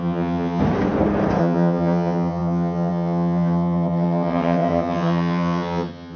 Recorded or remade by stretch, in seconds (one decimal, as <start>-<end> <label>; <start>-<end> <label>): 0.0-0.6 remade; 0.6-1.4 recorded; 1.4-6.2 remade